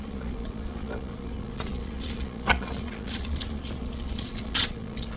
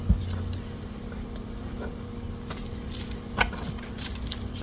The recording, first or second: second